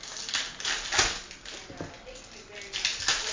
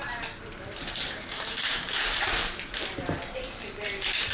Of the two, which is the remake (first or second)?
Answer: second